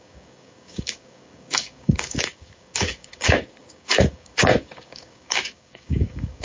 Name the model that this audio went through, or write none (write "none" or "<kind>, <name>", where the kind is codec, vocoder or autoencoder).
codec, DAC